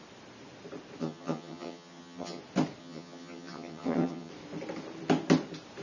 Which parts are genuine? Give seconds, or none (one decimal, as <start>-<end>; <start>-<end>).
0.0-1.0; 2.4-2.8; 4.3-5.8